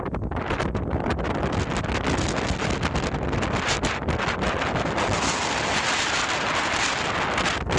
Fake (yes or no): no